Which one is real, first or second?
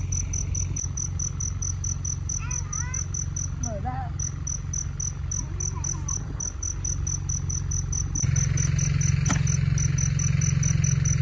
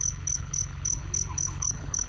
first